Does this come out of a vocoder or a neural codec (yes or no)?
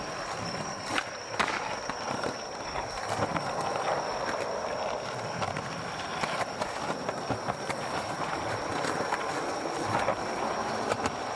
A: no